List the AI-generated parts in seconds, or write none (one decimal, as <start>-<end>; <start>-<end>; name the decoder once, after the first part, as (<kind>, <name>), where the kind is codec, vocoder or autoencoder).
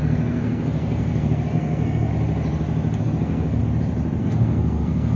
0.0-2.1 (codec, SNAC); 3.0-3.6; 4.2-5.2